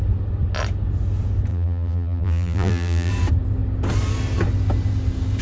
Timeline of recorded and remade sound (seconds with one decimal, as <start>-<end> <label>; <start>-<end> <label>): 0.0-1.5 recorded; 1.5-3.1 remade; 3.1-5.4 recorded